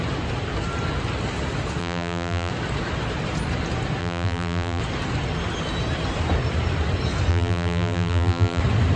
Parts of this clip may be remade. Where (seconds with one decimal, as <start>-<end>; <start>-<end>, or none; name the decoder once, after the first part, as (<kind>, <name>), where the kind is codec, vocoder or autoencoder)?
1.8-2.5 (vocoder, BigVGAN v2); 4.0-4.8; 7.3-8.6